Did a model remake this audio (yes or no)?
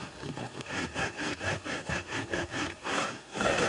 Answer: yes